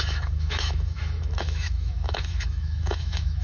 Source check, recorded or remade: remade